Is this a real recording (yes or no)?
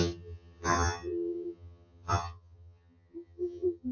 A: no